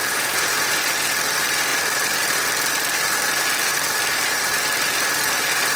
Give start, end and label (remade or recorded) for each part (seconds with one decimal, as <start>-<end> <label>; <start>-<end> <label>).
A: 0.0-0.8 remade; 0.8-5.8 recorded